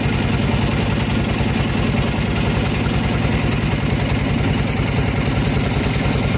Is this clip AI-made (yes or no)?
no